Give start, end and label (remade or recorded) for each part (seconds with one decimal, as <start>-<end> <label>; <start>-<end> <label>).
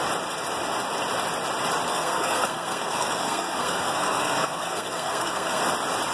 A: 0.0-1.9 recorded; 1.9-5.6 remade; 5.6-6.1 recorded